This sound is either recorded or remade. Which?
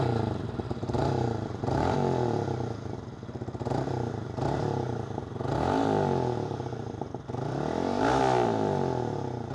recorded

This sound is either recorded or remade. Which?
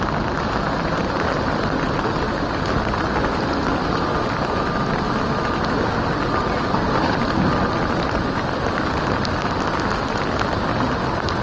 recorded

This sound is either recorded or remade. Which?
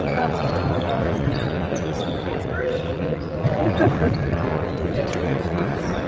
remade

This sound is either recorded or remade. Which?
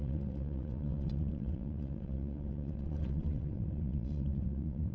remade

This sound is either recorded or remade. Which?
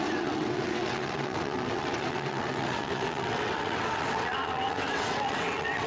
remade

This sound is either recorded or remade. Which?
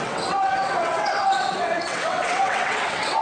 remade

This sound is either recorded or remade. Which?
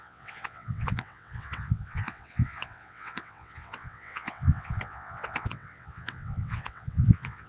remade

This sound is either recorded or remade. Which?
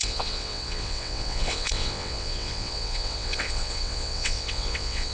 remade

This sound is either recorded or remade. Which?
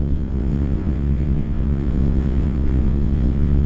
remade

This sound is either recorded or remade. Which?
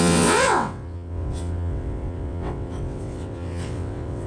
remade